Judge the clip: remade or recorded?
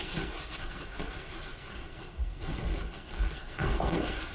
remade